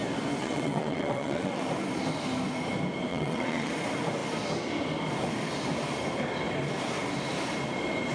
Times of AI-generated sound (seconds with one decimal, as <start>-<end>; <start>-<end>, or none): 0.4-1.6; 3.1-3.7